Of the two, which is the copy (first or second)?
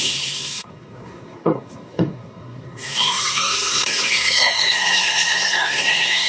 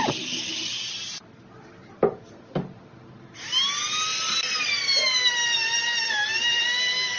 first